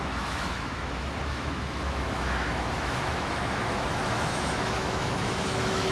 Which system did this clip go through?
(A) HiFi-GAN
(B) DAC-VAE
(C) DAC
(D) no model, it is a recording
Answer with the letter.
B